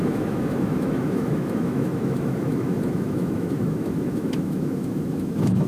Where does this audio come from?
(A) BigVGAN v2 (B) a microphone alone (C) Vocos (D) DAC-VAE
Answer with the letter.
D